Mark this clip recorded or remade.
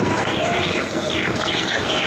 remade